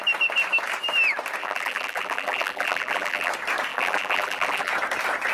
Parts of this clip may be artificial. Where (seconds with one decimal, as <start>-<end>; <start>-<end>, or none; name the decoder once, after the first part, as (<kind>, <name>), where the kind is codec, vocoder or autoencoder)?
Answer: 1.4-3.3 (vocoder, BigVGAN v2); 3.7-4.7